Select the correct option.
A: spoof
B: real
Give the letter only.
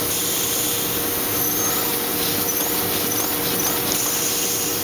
B